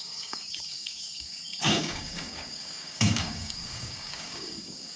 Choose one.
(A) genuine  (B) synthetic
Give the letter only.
B